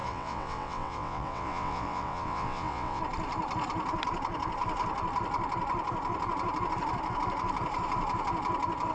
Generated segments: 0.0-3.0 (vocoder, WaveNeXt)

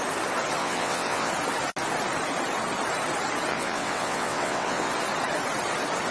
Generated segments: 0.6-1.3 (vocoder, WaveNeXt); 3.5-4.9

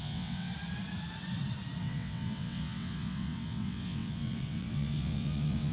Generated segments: 0.0-0.5 (vocoder, WaveNeXt); 1.8-5.7

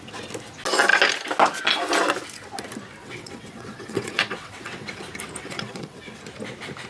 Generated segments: 3.0-5.0 (vocoder, WaveNeXt); 5.4-6.2